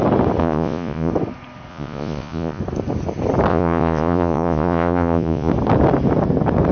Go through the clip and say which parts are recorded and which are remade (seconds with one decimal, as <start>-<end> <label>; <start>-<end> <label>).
0.0-0.4 recorded; 0.4-1.1 remade; 1.1-1.7 recorded; 1.7-2.6 remade; 2.6-3.5 recorded; 3.5-5.5 remade; 5.5-6.7 recorded